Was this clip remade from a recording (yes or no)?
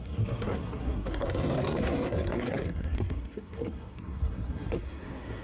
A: yes